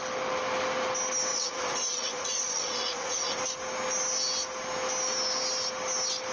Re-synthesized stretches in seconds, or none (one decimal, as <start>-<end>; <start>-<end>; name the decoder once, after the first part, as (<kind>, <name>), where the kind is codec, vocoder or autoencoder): 1.3-3.4 (vocoder, Vocos)